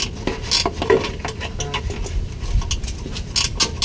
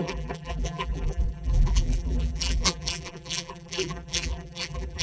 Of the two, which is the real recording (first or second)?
first